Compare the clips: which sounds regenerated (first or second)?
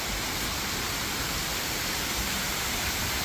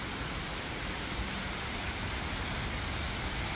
first